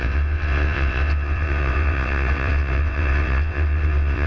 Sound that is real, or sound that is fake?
fake